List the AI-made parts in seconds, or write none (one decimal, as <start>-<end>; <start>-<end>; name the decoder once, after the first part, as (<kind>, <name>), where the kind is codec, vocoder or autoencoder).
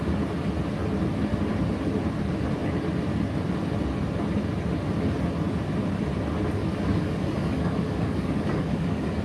6.6-9.2 (codec, DAC)